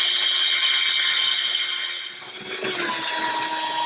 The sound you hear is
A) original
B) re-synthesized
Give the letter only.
A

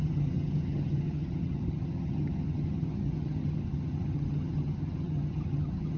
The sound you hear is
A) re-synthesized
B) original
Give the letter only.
A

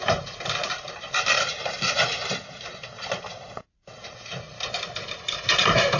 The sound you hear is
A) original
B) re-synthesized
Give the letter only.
B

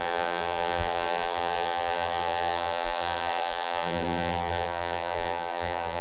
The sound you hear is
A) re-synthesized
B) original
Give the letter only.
A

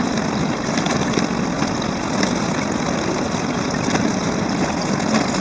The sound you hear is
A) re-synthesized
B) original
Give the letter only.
B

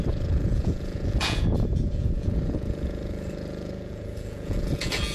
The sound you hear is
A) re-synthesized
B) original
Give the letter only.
A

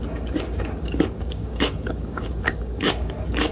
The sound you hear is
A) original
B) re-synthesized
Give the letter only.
B